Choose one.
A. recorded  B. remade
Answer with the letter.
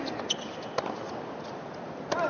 A